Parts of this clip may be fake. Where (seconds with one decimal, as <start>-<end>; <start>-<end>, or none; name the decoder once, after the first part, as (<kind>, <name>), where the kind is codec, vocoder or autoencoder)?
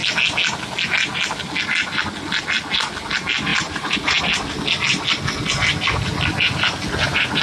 3.5-4.2 (vocoder, BigVGAN v2)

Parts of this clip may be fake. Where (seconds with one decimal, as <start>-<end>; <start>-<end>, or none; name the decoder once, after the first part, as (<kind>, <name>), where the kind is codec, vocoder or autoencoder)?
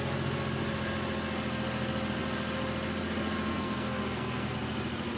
3.5-4.5 (codec, SNAC)